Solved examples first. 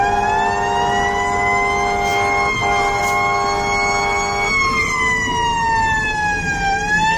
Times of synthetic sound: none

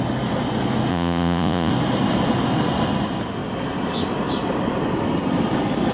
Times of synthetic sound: 0.9-1.7 (vocoder, Vocos)

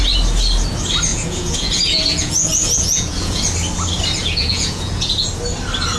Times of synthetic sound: 1.1-3.4 (vocoder, Vocos); 4.2-5.3

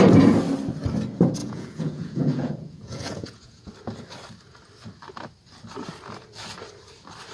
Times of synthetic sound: 1.4-3.7 (vocoder, Vocos)